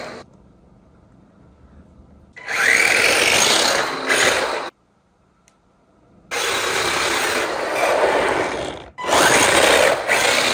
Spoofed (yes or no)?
no